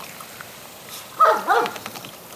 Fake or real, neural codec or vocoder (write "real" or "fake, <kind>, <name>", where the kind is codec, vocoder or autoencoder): real